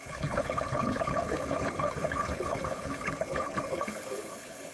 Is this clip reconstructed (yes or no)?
yes